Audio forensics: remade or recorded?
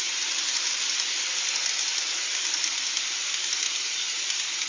recorded